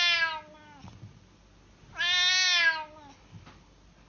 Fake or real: real